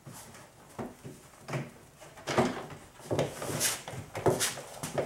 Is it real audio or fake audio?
real